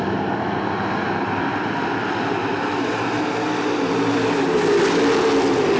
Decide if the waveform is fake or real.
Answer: real